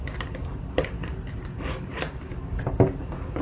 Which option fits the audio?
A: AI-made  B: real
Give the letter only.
B